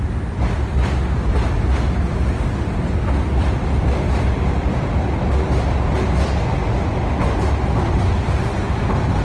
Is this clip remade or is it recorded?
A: recorded